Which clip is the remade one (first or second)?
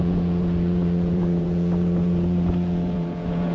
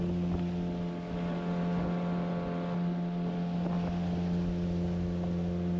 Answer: first